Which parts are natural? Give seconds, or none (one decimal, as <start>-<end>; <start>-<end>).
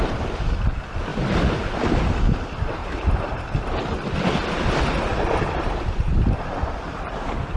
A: 0.0-2.8; 3.3-5.1; 6.6-7.6